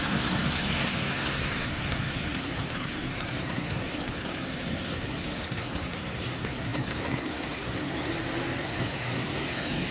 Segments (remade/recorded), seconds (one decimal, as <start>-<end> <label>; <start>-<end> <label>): 0.0-8.1 remade; 8.1-8.6 recorded; 8.6-9.9 remade

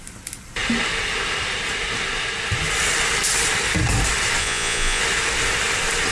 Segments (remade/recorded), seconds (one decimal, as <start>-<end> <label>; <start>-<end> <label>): 0.0-4.4 recorded; 4.4-5.0 remade; 5.0-6.1 recorded

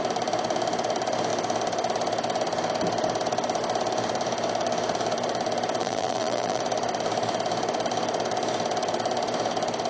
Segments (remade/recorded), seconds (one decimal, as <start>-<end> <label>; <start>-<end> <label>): 0.0-5.8 recorded; 5.8-6.6 remade; 6.6-9.9 recorded

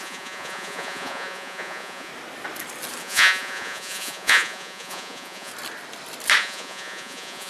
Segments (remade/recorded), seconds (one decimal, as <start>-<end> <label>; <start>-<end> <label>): 0.0-2.1 remade; 2.1-3.0 recorded; 3.0-5.5 remade; 5.5-6.4 recorded; 6.4-7.5 remade